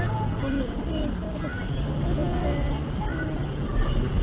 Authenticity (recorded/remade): recorded